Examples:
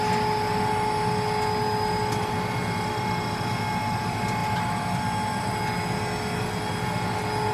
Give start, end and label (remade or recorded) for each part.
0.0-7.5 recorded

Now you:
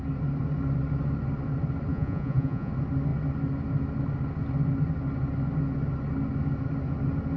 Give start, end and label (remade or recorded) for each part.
0.0-1.9 recorded; 1.9-2.7 remade; 2.7-7.4 recorded

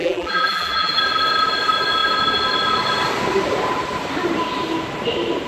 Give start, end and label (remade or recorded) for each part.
0.0-1.0 remade; 1.0-5.5 recorded

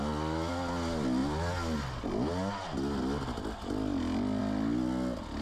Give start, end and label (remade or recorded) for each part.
0.0-5.4 recorded

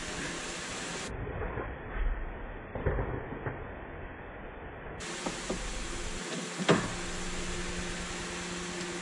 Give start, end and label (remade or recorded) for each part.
0.0-0.7 recorded; 0.7-2.0 remade; 2.0-9.0 recorded

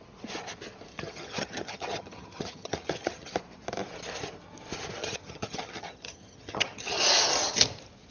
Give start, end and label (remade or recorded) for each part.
0.0-0.9 recorded; 0.9-3.3 remade; 3.3-5.0 recorded; 5.0-7.0 remade; 7.0-8.1 recorded